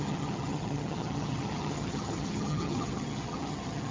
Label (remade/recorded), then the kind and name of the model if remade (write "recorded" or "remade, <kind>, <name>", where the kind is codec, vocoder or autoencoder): remade, vocoder, HiFi-GAN